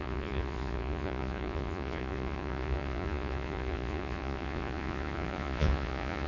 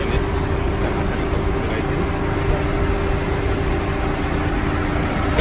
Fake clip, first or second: first